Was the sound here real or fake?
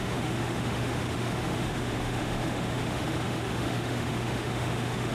fake